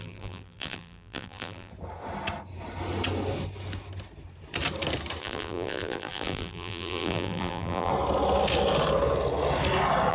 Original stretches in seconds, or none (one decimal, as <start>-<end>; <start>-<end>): 1.7-5.2; 7.9-10.1